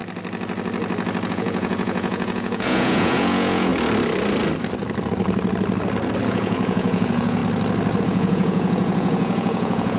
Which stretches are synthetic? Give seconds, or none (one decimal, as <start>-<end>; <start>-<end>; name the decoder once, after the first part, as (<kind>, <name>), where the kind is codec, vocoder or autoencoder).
1.3-3.7 (vocoder, Vocos); 6.3-7.4; 8.0-10.0